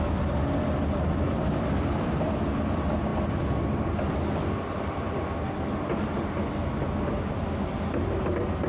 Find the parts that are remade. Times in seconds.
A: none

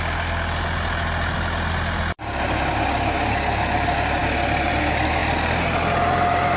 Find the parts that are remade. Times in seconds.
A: none

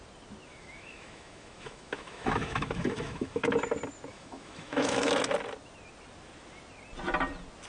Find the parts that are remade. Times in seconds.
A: 0.5-3.6; 4.1-5.1

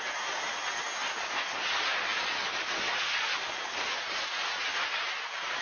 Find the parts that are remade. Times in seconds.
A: 1.0-1.7; 2.1-3.6

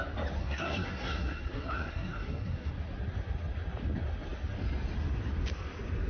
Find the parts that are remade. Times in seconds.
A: 0.4-2.7

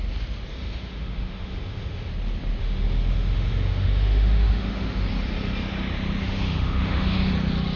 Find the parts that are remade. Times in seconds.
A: 0.5-2.1; 2.6-5.1; 6.2-7.3